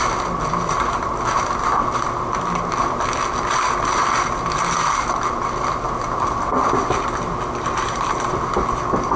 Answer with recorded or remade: recorded